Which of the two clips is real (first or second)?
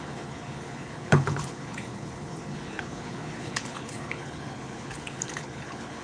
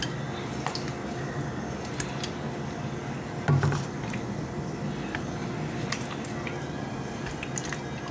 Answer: second